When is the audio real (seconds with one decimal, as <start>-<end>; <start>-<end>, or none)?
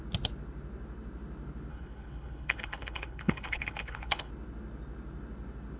0.0-1.7; 4.3-5.8